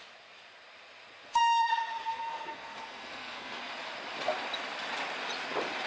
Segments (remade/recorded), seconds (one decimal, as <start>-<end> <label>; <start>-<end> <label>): 0.0-1.4 recorded; 1.4-3.6 remade; 3.6-5.9 recorded

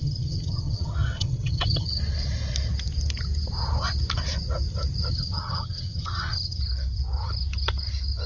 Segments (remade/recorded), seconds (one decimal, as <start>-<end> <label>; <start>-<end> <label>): 0.0-2.0 remade; 2.0-5.1 recorded; 5.1-6.6 remade; 6.6-8.3 recorded

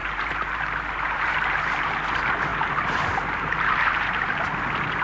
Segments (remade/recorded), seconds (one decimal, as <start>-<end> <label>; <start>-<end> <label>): 0.0-1.9 remade; 1.9-2.5 recorded; 2.5-4.3 remade; 4.3-5.0 recorded